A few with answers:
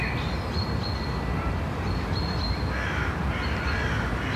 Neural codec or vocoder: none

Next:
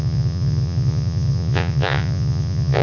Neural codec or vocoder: vocoder, Vocos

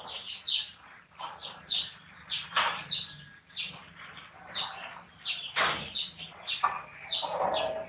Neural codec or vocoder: none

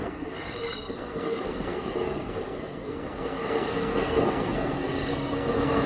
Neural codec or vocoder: codec, SNAC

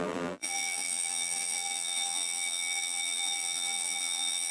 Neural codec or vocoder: vocoder, BigVGAN v2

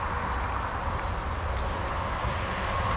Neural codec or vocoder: none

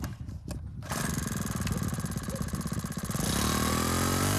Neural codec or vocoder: none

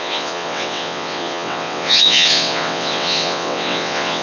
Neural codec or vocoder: vocoder, WaveNeXt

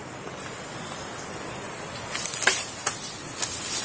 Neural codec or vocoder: none